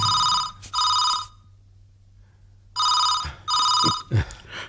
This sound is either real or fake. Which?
real